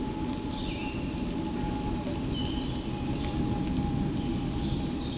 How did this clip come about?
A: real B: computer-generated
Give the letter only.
A